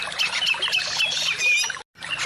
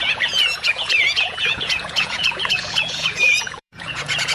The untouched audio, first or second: first